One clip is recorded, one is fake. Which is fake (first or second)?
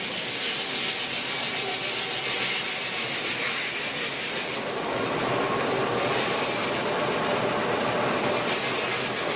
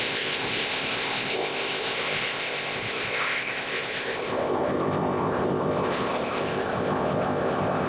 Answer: second